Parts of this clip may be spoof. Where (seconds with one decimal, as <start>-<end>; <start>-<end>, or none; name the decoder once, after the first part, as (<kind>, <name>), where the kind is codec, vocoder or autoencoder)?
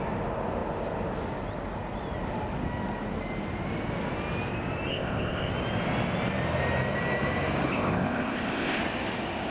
4.9-5.5 (codec, ZipCodec); 7.7-8.8